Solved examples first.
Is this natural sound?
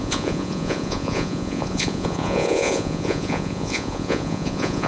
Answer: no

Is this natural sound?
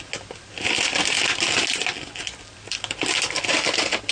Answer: yes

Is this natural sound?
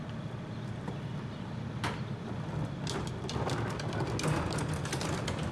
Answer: yes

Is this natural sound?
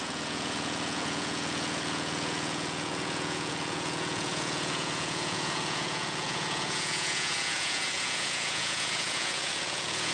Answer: no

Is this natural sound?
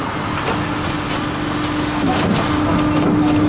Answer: yes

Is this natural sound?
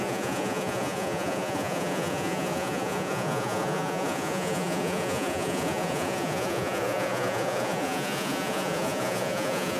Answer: no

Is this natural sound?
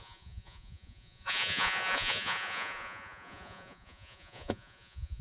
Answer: no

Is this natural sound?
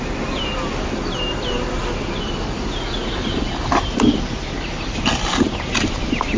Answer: yes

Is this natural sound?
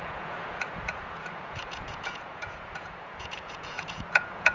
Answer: no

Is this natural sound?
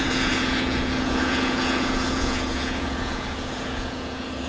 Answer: no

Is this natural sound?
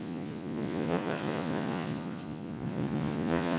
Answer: no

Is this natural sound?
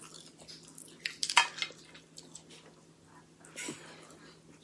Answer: yes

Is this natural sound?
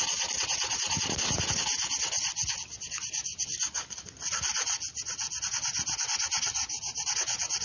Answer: yes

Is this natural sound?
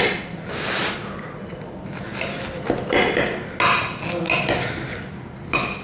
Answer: yes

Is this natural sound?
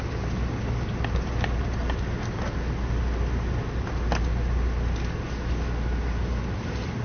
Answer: yes